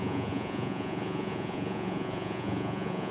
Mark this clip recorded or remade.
remade